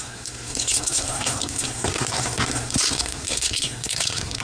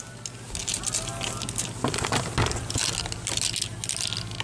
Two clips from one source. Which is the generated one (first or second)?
first